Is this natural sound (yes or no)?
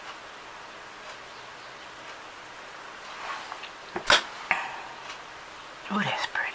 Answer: yes